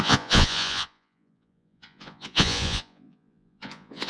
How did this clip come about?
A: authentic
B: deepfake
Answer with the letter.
B